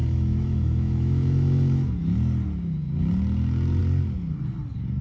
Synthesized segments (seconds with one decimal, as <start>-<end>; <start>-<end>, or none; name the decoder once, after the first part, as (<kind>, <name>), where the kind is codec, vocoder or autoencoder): 0.0-1.9 (autoencoder, DAC-VAE)